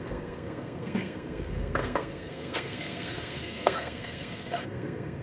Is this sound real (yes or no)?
no